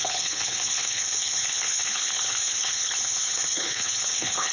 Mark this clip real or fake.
fake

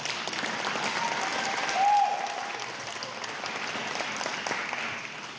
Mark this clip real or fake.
real